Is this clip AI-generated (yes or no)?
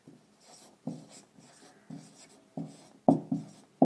no